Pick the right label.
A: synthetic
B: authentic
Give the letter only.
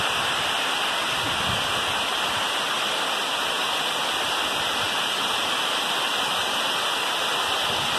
B